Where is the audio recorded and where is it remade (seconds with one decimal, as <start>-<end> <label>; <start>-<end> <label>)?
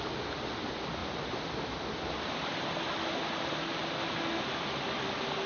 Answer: 0.0-5.5 recorded